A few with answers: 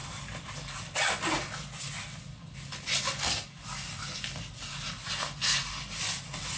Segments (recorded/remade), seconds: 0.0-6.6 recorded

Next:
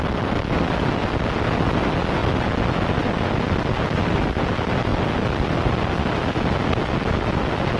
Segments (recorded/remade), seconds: 0.0-7.8 recorded

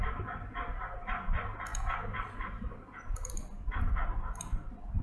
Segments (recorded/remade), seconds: 0.0-1.7 recorded; 1.7-5.0 remade

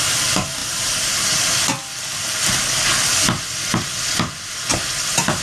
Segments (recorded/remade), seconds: 0.0-0.6 recorded; 0.6-1.5 remade; 1.5-4.7 recorded; 4.7-5.4 remade

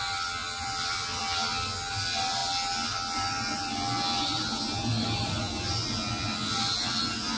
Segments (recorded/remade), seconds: 0.0-0.4 recorded; 0.4-1.2 remade; 1.2-4.9 recorded; 4.9-5.4 remade; 5.4-7.4 recorded

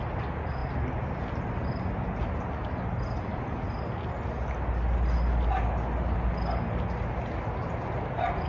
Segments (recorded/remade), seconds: 0.0-8.5 recorded

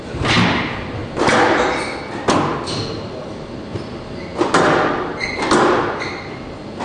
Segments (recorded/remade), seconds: 0.0-6.8 recorded

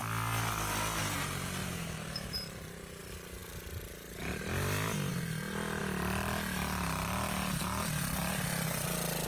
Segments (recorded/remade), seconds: 0.0-1.6 recorded; 1.6-3.0 remade; 3.0-9.3 recorded